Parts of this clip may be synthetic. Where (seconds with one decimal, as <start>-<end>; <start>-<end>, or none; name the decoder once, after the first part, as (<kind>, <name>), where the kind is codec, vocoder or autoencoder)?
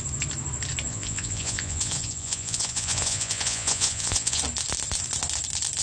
0.9-4.4 (vocoder, Vocos)